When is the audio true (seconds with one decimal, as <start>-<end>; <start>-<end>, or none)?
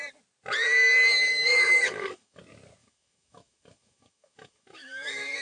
0.0-1.3; 2.4-2.8